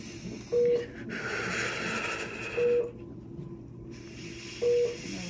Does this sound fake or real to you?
real